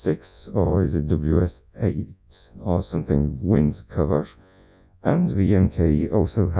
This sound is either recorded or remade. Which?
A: remade